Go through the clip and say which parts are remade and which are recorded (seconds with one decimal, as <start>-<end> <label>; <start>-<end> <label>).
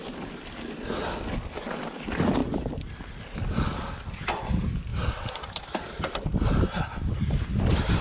0.0-8.0 recorded